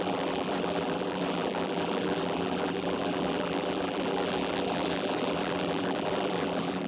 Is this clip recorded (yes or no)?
no